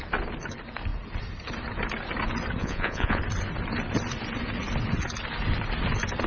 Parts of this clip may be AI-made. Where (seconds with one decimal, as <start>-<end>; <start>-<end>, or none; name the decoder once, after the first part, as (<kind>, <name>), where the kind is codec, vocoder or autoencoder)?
2.6-3.2 (vocoder, Vocos)